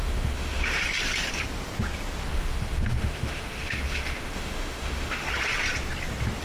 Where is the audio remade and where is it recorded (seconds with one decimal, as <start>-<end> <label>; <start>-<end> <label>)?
0.0-0.8 remade; 0.8-2.2 recorded; 2.2-5.3 remade; 5.3-6.4 recorded

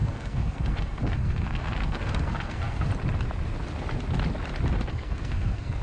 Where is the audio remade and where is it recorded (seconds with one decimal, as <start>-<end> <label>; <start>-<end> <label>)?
0.0-2.9 remade; 2.9-4.9 recorded; 4.9-5.8 remade